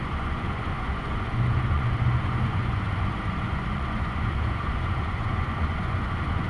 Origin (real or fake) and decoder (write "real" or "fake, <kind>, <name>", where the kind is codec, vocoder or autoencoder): fake, vocoder, Vocos